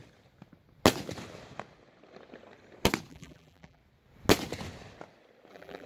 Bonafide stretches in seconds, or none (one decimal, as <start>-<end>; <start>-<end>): 0.0-3.1; 3.8-5.5